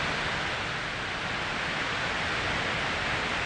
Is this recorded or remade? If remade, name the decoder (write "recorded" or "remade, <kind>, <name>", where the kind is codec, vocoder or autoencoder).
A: recorded